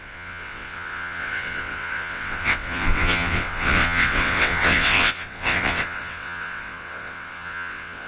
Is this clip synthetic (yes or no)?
yes